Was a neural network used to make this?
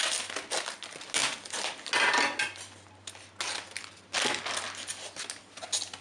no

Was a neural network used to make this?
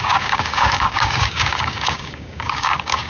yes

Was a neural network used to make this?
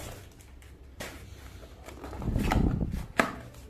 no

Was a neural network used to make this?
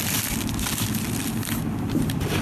yes